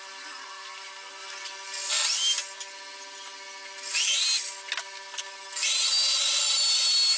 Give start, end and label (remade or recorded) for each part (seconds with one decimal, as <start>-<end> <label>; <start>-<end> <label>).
0.0-7.2 recorded